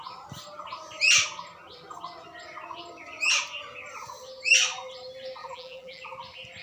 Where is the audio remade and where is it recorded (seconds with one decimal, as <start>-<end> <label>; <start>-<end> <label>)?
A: 0.0-5.4 recorded; 5.4-6.0 remade; 6.0-6.6 recorded